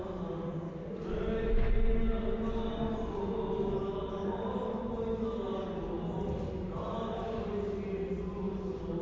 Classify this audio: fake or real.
real